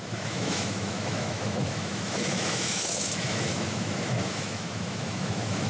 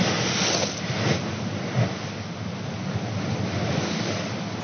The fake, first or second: first